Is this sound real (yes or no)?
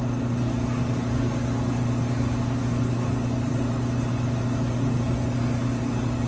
yes